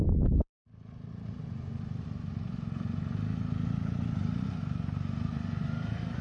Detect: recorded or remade recorded